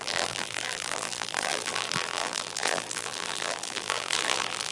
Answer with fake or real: fake